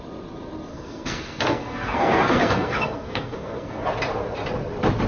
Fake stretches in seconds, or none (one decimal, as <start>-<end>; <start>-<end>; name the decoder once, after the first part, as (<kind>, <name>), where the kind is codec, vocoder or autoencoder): 0.7-3.8 (codec, SNAC)